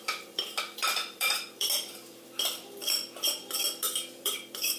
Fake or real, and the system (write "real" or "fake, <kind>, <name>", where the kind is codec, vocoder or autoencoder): fake, vocoder, BigVGAN v2